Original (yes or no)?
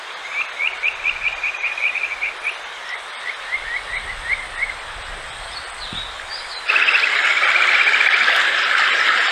yes